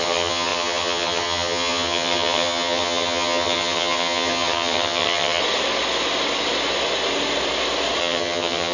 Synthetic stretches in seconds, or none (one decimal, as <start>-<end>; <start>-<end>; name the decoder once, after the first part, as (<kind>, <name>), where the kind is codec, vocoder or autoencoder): 0.0-5.4 (vocoder, HiFi-GAN); 8.0-8.7